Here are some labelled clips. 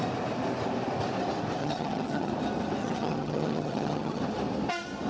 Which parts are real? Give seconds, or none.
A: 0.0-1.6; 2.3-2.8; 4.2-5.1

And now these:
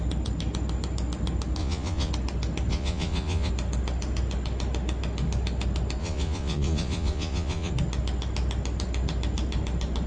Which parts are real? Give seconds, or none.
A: 0.0-1.6; 2.1-2.7; 3.5-6.0; 7.7-10.1

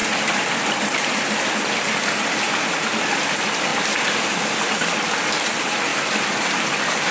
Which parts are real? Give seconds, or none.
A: 0.0-3.7; 5.4-5.9; 6.5-7.1

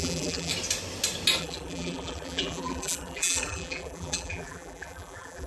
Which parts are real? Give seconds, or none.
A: 0.5-1.4

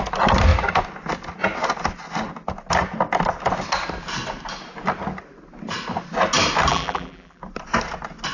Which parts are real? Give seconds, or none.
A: 0.0-6.7; 7.4-8.3

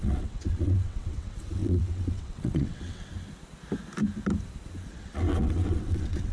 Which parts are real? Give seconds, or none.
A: 3.1-4.9

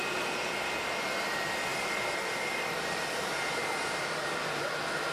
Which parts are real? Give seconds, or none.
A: 0.0-1.7